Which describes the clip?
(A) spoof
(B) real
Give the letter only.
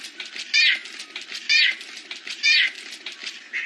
B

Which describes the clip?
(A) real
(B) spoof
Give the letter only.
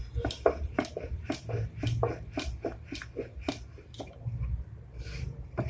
A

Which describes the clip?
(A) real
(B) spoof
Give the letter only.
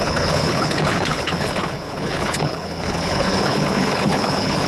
B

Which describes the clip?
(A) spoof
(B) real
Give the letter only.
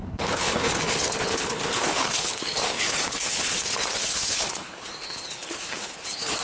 A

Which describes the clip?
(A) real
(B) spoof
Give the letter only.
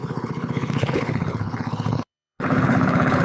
B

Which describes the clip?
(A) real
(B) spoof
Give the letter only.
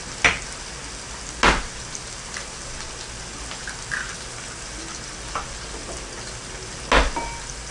A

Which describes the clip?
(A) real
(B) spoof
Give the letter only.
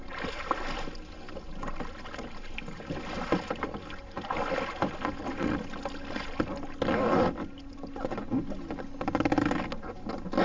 A